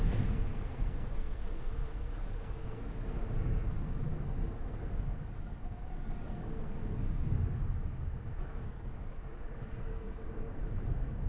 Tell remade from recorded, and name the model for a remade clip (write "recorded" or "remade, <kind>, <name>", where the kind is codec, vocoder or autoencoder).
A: remade, codec, SNAC